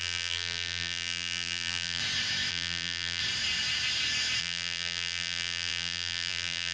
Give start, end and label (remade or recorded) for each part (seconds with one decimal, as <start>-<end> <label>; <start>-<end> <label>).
0.0-2.0 remade; 2.0-2.5 recorded; 2.5-3.2 remade; 3.2-4.4 recorded; 4.4-6.7 remade